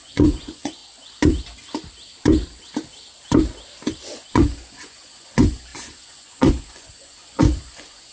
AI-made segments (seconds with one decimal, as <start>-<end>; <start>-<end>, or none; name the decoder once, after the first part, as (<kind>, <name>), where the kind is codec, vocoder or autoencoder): 0.0-0.8 (vocoder, Vocos); 4.3-8.1

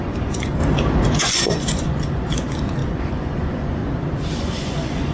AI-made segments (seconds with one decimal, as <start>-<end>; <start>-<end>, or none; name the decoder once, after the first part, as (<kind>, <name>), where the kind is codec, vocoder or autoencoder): 0.0-0.6 (vocoder, Vocos); 1.2-3.8; 4.4-5.1

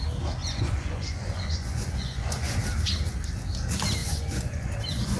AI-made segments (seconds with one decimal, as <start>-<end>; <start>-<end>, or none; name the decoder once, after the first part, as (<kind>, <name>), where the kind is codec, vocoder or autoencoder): 0.4-2.6 (vocoder, Vocos); 4.0-5.2

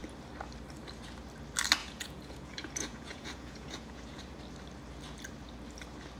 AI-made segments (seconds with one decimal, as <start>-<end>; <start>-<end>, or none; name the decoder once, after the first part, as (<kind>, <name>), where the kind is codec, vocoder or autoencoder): 1.8-4.2 (vocoder, Vocos)

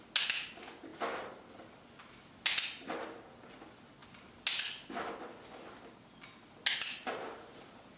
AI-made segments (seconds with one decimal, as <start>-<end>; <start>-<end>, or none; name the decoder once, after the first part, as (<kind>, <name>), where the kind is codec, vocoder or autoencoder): none